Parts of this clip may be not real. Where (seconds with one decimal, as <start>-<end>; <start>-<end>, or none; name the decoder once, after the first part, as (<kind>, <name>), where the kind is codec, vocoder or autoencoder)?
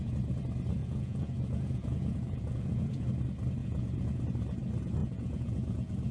0.8-3.1 (vocoder, Vocos); 3.6-4.2; 5.0-6.1